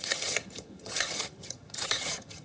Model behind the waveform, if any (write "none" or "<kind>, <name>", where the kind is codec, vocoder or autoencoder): vocoder, HiFi-GAN